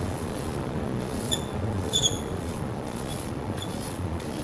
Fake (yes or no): yes